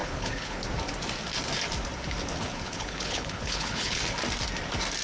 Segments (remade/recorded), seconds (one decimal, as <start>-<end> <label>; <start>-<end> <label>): 0.0-0.6 remade; 0.6-2.5 recorded; 2.5-4.1 remade; 4.1-5.0 recorded